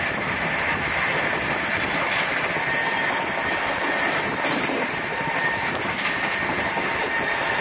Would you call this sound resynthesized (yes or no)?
no